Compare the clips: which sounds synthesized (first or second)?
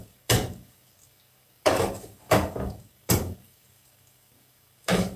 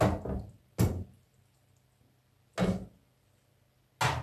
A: first